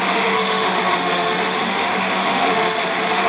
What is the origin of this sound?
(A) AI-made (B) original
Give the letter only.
A